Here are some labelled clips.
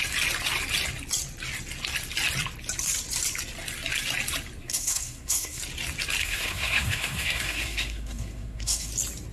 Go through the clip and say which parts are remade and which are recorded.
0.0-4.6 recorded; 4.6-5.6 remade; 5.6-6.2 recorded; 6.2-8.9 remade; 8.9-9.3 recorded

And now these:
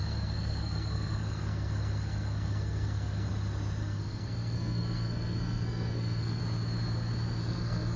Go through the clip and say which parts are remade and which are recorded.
0.0-3.3 remade; 3.3-3.8 recorded; 3.8-6.4 remade; 6.4-7.4 recorded; 7.4-8.0 remade

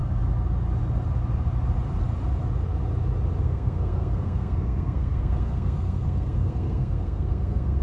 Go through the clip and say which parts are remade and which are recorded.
0.0-3.4 recorded; 3.4-7.8 remade

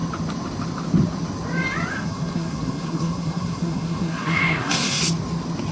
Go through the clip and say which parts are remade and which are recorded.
0.0-1.9 recorded; 1.9-5.0 remade; 5.0-5.7 recorded

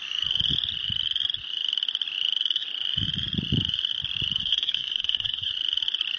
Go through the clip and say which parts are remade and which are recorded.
0.0-4.4 recorded; 4.4-5.5 remade; 5.5-6.2 recorded